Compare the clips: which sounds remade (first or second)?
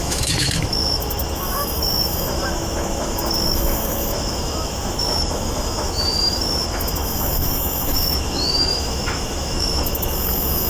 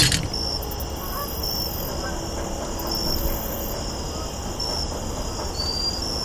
first